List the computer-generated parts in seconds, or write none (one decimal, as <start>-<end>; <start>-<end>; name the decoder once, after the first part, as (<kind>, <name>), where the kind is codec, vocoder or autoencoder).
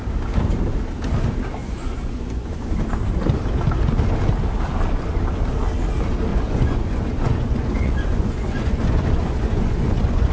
1.6-2.6 (vocoder, Vocos); 6.3-10.3